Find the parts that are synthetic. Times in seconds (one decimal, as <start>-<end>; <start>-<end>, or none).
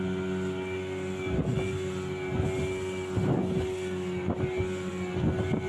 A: none